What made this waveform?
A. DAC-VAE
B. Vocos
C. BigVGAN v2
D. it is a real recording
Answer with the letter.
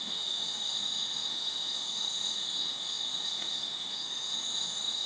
A